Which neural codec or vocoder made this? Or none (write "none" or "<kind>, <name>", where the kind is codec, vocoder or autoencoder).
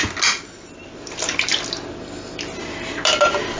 none